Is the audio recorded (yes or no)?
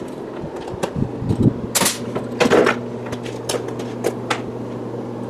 yes